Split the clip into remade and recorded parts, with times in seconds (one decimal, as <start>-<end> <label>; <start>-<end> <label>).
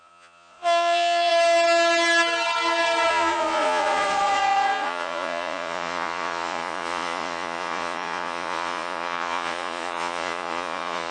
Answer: 0.0-1.3 remade; 1.3-3.1 recorded; 3.1-11.1 remade